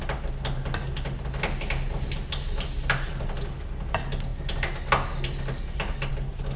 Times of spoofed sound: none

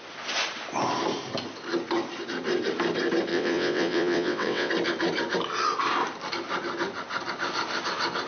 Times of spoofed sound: 3.3-4.7 (vocoder, WaveNeXt)

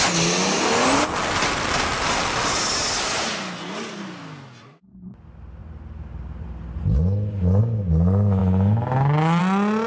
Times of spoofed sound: none

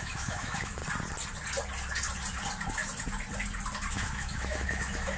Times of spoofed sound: 0.0-0.8 (autoencoder, DAC-VAE); 3.9-5.2

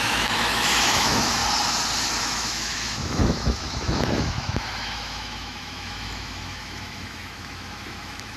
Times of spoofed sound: 0.0-1.4 (autoencoder, DAC-VAE); 2.2-8.4

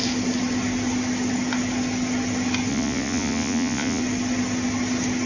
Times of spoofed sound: 2.7-4.0 (vocoder, Vocos)

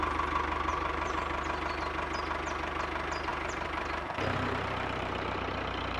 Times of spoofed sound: 0.7-1.4 (vocoder, BigVGAN v2); 3.3-6.0

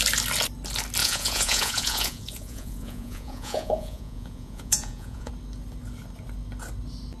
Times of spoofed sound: 1.0-5.3 (vocoder, Vocos)